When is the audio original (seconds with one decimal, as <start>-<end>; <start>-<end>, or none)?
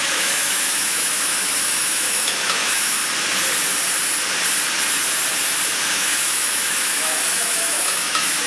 3.0-5.9